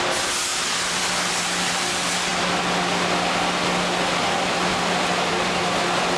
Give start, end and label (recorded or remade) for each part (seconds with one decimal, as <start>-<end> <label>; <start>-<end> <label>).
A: 0.0-6.2 recorded